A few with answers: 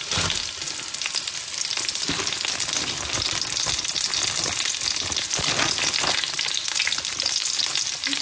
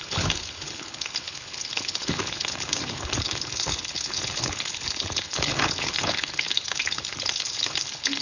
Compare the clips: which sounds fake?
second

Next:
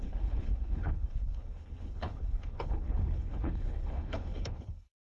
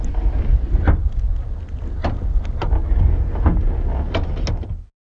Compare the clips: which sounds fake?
first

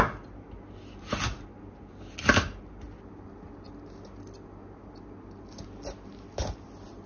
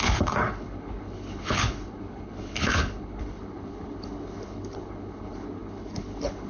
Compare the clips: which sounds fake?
second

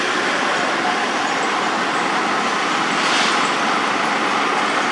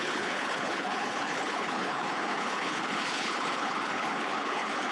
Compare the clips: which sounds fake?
second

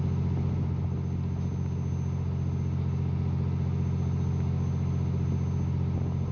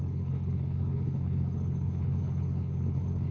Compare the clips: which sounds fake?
second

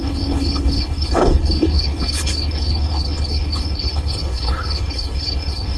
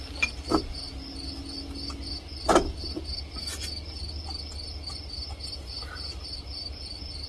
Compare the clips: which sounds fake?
first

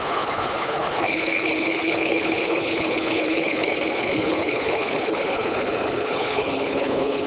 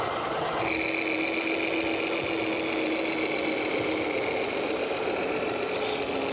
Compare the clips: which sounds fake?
first